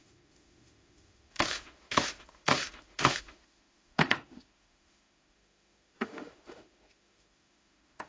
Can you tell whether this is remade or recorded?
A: remade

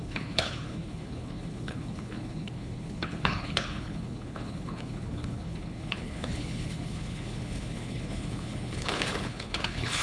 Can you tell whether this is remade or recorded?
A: remade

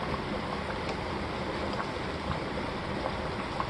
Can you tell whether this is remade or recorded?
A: recorded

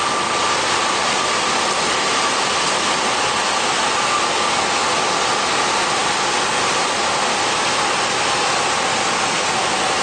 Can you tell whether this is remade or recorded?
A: recorded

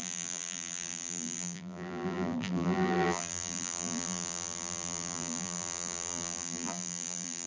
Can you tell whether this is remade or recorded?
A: remade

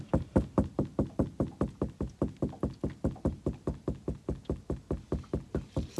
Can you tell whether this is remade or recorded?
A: recorded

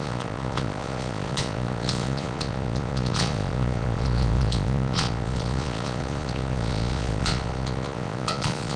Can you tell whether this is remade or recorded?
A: remade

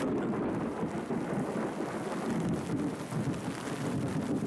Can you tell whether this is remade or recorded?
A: recorded